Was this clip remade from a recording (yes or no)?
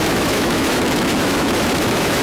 yes